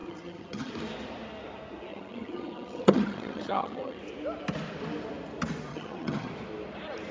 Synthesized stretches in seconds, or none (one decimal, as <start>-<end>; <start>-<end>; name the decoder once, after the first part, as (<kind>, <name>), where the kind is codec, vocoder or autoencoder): 0.0-0.7 (vocoder, HiFi-GAN); 1.9-4.0; 5.7-6.3